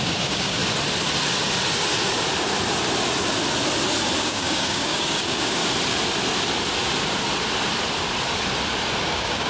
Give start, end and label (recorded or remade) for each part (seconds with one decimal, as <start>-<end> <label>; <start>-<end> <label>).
0.0-0.6 remade; 0.6-4.2 recorded; 4.2-5.6 remade; 5.6-9.0 recorded; 9.0-9.5 remade